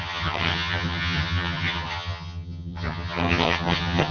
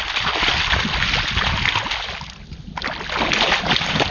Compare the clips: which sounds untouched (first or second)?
second